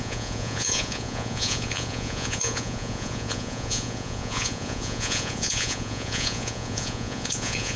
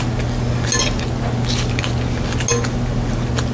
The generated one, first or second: first